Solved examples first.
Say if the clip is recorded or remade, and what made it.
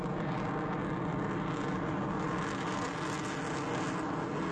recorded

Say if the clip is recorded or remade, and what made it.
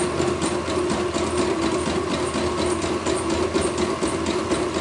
recorded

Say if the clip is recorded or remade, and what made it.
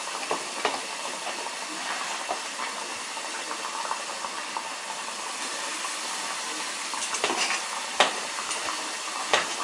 recorded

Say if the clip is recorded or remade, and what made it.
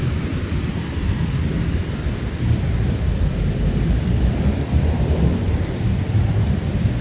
remade, vocoder, BigVGAN v2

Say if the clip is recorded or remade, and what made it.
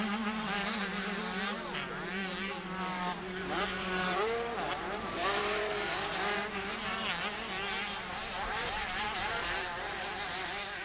remade, vocoder, BigVGAN v2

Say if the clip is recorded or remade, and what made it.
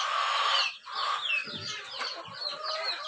remade, vocoder, BigVGAN v2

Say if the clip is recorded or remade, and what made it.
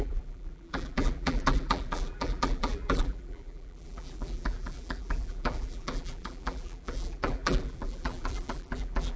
remade, vocoder, BigVGAN v2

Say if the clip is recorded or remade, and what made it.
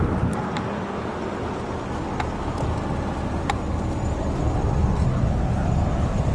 recorded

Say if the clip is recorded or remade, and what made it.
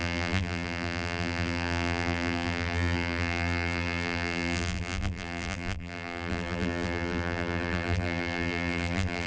remade, vocoder, BigVGAN v2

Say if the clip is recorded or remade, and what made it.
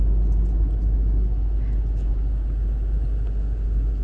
recorded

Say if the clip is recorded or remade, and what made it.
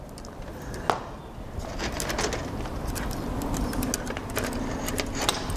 recorded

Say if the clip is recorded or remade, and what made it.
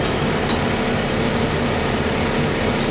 remade, vocoder, BigVGAN v2